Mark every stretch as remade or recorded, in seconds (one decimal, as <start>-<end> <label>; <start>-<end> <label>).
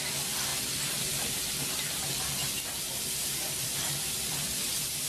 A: 0.0-0.5 remade; 0.5-3.6 recorded; 3.6-5.1 remade